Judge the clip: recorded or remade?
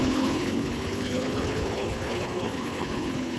remade